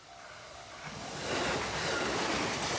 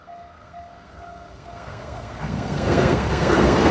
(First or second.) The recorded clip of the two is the first